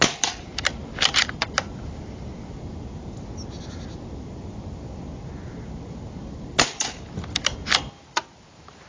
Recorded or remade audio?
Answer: recorded